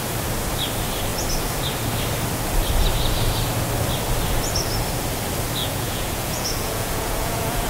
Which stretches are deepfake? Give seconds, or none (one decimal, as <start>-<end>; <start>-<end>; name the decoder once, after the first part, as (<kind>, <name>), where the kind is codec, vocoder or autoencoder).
5.6-7.7 (vocoder, Vocos)